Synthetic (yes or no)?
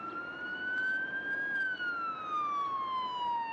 no